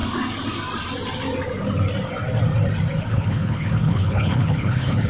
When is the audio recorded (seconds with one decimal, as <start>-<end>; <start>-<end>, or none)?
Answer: 0.0-3.1